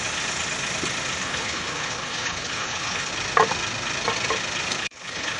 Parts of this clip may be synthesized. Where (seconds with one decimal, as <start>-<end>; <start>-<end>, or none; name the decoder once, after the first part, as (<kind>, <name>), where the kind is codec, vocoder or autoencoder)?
1.2-3.1 (codec, HILCodec); 4.8-5.4